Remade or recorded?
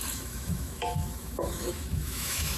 remade